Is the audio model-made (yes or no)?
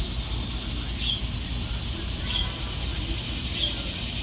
no